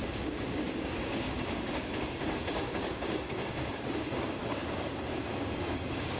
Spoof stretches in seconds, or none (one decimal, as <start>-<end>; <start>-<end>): 0.0-6.2